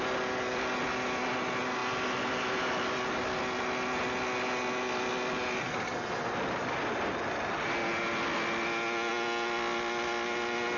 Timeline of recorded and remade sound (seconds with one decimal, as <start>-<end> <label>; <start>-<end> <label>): 0.0-10.8 recorded